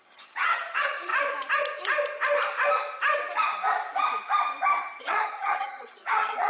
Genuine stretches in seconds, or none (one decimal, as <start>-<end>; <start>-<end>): 1.1-5.0